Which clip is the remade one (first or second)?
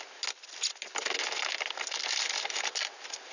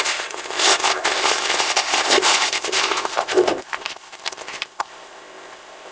second